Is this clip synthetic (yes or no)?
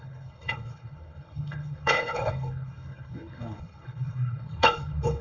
yes